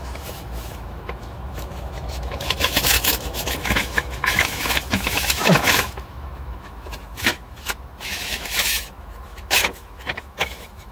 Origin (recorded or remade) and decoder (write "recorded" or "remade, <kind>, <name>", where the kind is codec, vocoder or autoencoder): remade, autoencoder, DAC-VAE